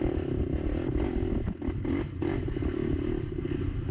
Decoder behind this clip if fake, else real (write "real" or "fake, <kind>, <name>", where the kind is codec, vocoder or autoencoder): real